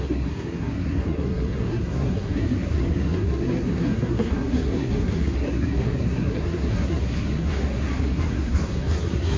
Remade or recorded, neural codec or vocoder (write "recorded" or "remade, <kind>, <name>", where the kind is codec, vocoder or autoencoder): remade, codec, SNAC